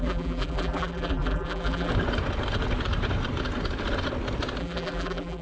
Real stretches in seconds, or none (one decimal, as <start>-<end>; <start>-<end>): 1.9-4.6